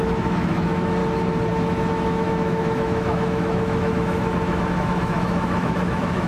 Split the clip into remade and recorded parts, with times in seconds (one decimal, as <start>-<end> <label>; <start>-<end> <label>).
0.0-1.0 remade; 1.0-1.5 recorded; 1.5-6.3 remade